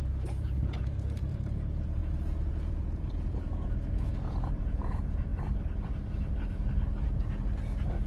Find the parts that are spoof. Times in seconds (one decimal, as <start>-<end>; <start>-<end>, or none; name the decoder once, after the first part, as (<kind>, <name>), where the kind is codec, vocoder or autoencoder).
0.0-5.3 (vocoder, Vocos)